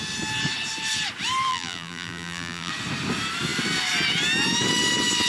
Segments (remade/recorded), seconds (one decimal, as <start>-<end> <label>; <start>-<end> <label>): 0.0-1.5 recorded; 1.5-2.7 remade; 2.7-5.3 recorded